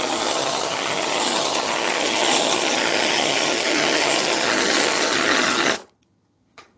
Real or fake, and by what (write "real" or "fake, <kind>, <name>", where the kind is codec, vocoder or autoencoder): fake, vocoder, HiFi-GAN